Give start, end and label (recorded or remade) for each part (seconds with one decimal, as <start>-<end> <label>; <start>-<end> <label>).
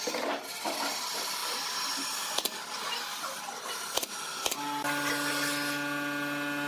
0.0-6.7 recorded